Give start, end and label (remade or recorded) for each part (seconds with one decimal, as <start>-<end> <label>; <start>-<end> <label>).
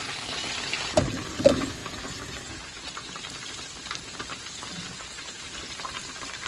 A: 0.0-6.5 remade